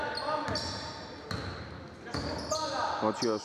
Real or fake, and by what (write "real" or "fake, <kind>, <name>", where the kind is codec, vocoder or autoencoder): real